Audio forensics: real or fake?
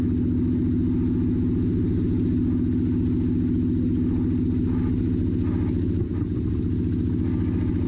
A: real